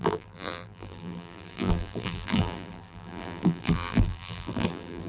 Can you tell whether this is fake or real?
fake